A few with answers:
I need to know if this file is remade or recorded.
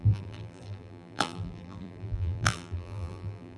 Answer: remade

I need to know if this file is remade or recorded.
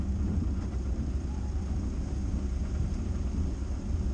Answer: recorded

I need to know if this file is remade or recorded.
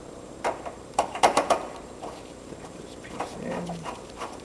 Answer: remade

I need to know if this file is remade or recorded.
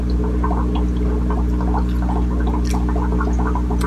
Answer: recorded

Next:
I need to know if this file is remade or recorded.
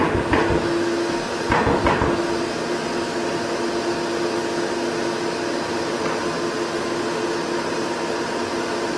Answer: recorded